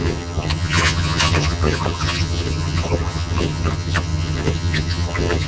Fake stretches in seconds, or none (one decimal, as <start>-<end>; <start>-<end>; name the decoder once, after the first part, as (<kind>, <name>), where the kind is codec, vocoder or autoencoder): 0.0-5.5 (vocoder, HiFi-GAN)